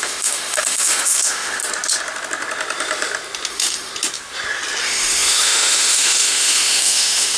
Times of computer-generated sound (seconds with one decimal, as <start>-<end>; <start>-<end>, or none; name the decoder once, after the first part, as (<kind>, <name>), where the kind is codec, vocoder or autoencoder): 0.0-1.6 (autoencoder, DAC-VAE); 3.5-3.9; 4.8-7.4